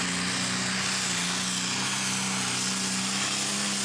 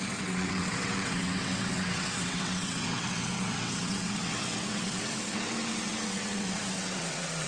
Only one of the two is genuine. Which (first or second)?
first